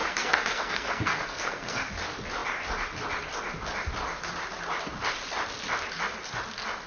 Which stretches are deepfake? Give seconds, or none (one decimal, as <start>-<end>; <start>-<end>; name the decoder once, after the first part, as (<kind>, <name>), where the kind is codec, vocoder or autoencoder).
0.0-1.9 (codec, SNAC)